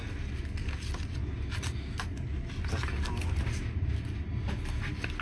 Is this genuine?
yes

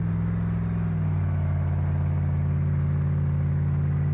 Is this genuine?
yes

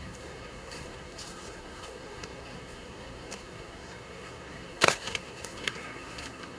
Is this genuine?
no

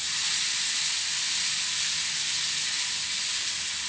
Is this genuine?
yes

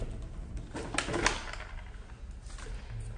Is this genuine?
yes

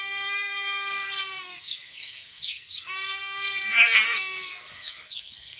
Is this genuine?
no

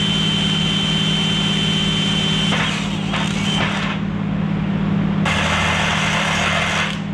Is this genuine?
yes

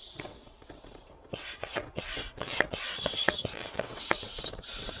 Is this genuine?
no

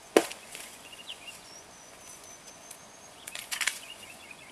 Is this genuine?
no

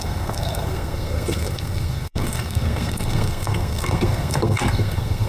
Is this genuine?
no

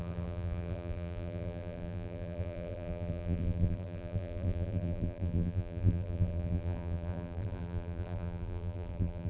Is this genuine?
no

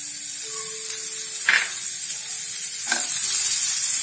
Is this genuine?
yes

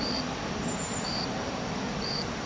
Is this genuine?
no